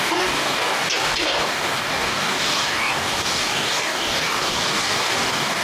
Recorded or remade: remade